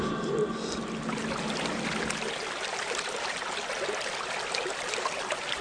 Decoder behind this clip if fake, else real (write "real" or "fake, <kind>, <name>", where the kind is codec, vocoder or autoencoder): real